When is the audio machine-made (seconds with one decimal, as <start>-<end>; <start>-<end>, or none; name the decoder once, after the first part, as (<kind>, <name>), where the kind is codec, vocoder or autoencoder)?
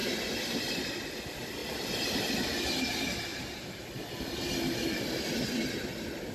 0.0-0.9 (vocoder, BigVGAN v2); 3.3-4.0